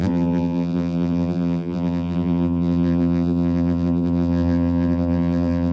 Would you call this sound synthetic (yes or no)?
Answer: yes